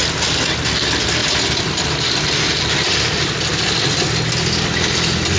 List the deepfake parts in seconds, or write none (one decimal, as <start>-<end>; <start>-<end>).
none